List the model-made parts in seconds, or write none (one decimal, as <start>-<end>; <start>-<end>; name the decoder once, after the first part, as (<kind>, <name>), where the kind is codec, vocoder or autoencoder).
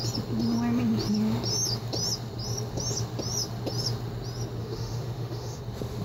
4.6-5.6 (autoencoder, DAC-VAE)